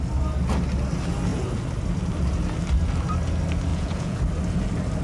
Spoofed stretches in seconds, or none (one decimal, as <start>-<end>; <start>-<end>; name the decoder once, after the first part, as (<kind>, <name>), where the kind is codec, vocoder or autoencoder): 3.7-4.2 (vocoder, Vocos)